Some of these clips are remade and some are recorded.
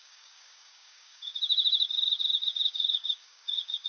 remade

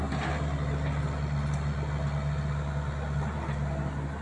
recorded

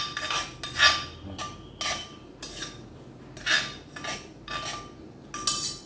recorded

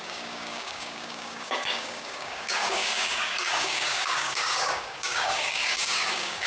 remade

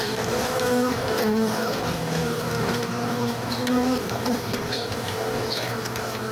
remade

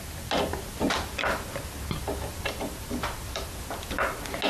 recorded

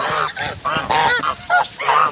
recorded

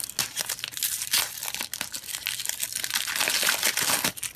recorded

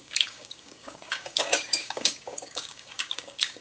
remade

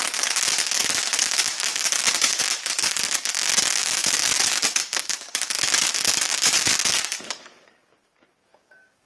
remade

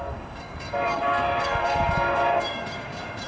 remade